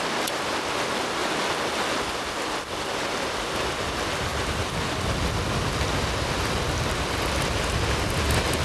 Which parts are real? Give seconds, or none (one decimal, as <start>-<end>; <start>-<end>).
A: 0.0-8.6